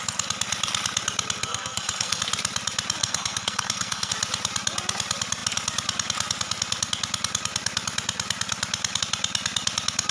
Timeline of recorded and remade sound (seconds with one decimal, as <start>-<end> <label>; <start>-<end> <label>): 0.0-1.4 recorded; 1.4-2.2 remade; 2.2-3.0 recorded; 3.0-4.1 remade; 4.1-10.1 recorded